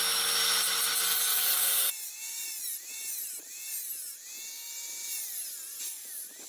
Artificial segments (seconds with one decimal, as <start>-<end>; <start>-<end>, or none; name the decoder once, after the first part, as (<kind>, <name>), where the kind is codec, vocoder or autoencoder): 1.3-2.9 (vocoder, BigVGAN v2)